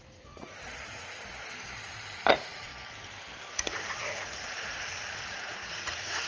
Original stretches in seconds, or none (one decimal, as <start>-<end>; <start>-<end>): 1.3-2.3; 2.7-3.5